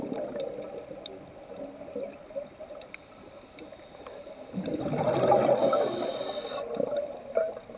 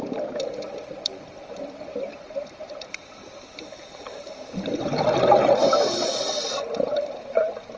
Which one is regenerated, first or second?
second